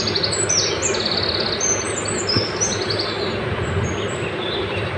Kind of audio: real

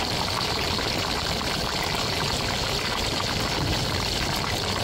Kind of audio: real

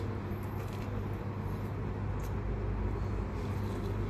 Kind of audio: real